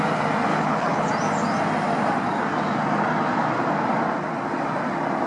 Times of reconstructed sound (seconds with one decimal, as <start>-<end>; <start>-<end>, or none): 0.5-1.1